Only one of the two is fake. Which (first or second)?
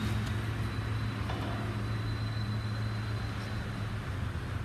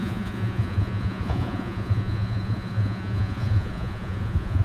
second